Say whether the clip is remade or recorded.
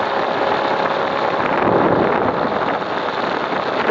recorded